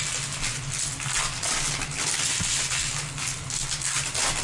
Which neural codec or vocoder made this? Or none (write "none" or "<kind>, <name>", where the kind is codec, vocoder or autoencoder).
none